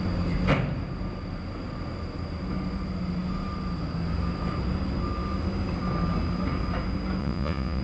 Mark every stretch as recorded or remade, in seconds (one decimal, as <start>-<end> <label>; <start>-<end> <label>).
0.0-7.2 recorded; 7.2-7.8 remade